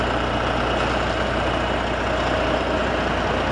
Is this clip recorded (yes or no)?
yes